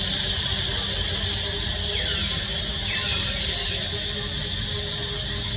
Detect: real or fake real